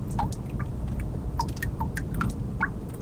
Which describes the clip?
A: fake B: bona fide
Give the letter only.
B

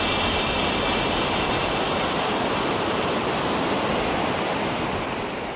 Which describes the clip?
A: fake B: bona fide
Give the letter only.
B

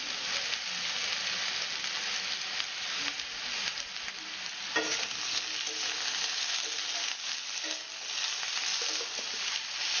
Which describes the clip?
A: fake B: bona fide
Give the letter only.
B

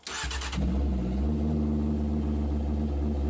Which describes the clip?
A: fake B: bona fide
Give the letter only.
B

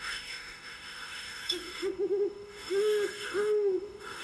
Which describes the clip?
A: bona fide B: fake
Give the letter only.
B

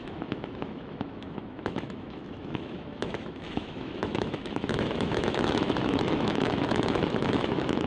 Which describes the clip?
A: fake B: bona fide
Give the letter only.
A